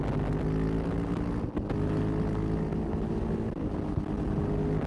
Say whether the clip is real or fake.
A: real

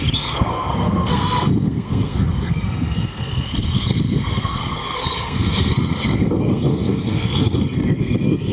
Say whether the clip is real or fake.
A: fake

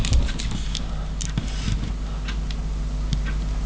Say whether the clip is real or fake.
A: real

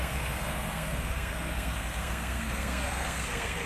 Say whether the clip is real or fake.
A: fake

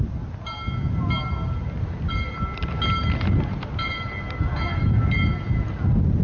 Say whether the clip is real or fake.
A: real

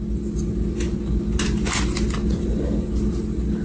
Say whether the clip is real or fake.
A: real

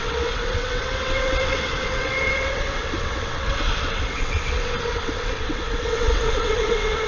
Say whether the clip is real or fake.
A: fake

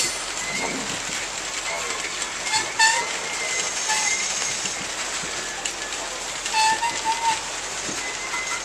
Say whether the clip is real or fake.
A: real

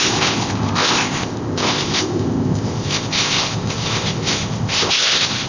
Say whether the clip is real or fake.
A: fake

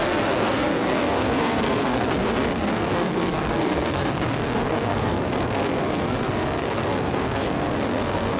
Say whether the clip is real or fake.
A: fake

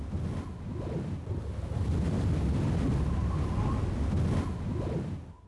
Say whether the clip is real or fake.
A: real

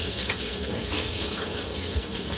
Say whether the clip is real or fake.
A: fake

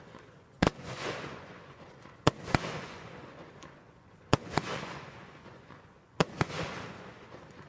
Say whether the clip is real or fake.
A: fake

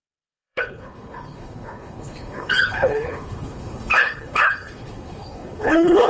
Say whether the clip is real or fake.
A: fake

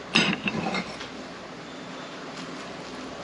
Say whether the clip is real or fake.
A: real